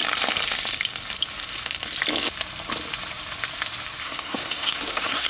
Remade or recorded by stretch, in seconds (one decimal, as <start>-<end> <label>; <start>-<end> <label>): 0.0-4.0 recorded; 4.0-5.3 remade